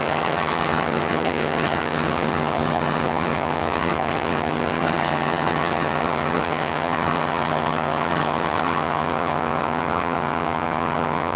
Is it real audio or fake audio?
fake